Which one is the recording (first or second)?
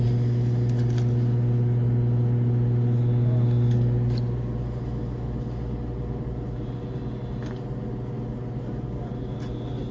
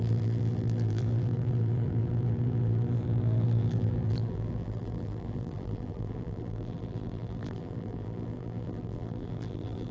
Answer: first